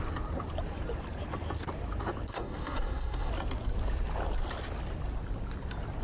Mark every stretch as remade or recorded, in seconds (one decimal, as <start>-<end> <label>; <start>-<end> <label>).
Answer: 0.0-2.3 recorded; 2.3-3.3 remade; 3.3-6.0 recorded